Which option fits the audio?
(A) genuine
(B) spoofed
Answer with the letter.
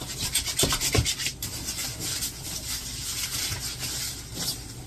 A